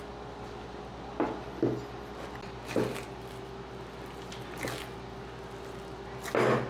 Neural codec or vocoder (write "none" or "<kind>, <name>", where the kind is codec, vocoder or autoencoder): none